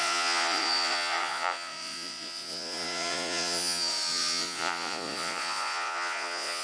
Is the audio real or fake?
fake